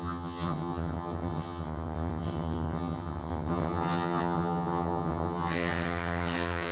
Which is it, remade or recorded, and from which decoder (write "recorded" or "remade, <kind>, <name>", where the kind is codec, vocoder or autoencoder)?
remade, vocoder, HiFi-GAN